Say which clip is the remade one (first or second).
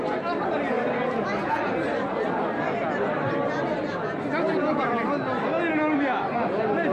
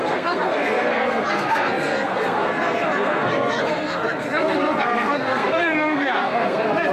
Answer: second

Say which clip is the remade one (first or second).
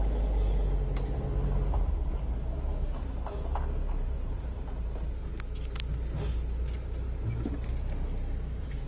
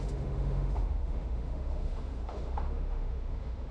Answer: second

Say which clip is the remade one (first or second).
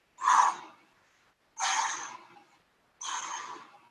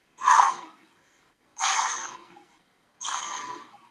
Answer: second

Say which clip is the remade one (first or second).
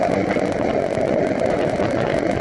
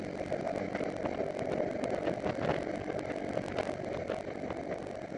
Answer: first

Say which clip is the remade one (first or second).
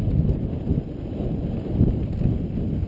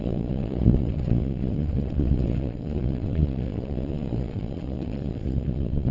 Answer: second